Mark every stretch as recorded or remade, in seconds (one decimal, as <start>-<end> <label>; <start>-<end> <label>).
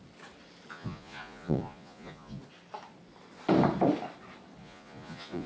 0.0-0.7 recorded; 0.7-2.4 remade; 2.4-4.6 recorded; 4.6-5.5 remade